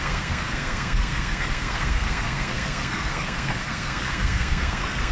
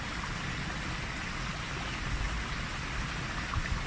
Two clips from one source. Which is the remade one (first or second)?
first